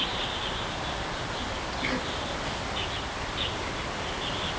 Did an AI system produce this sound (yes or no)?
no